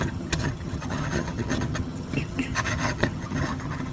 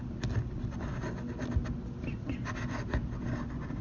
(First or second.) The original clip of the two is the second